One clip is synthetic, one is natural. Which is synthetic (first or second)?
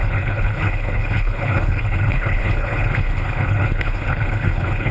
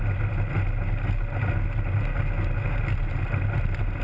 first